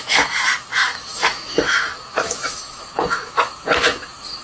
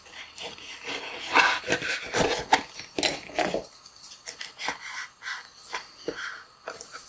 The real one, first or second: second